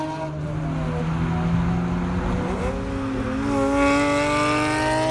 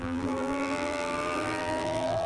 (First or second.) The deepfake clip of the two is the second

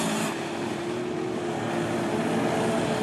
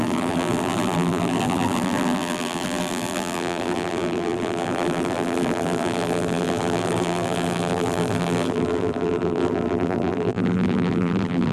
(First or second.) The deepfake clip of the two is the second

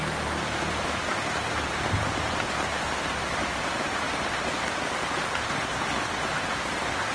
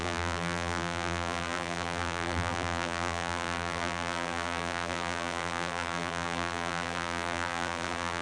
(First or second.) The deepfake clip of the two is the second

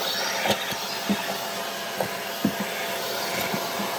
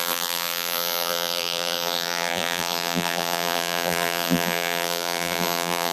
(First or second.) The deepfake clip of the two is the second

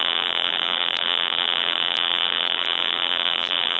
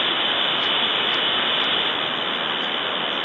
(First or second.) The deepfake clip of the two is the first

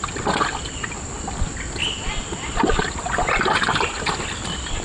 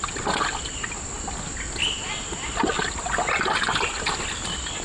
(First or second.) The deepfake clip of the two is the first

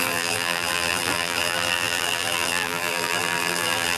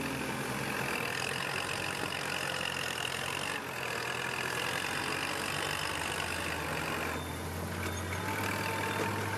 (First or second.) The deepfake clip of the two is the first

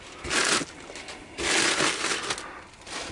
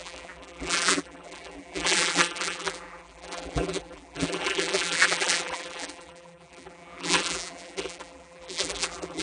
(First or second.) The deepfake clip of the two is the second